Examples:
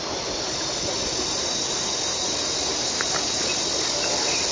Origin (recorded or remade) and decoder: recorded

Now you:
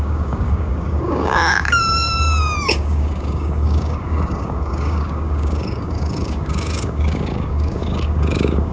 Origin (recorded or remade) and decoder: remade, codec, DAC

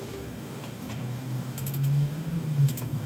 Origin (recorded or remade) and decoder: remade, codec, DAC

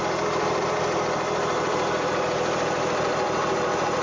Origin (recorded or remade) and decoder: recorded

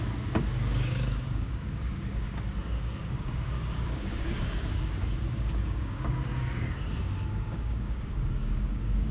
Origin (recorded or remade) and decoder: remade, codec, DAC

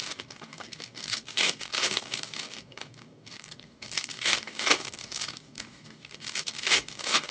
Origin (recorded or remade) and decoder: remade, codec, DAC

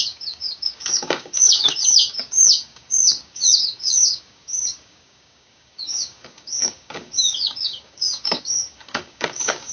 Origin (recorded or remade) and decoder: remade, codec, DAC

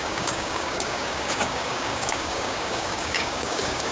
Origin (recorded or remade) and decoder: remade, codec, DAC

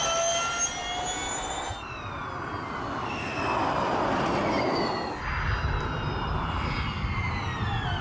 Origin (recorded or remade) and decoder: recorded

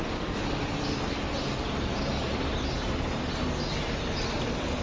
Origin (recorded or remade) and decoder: recorded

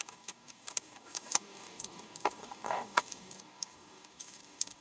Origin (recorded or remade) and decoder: remade, codec, DAC